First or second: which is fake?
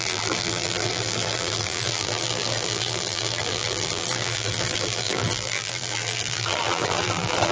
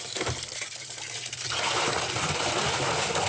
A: first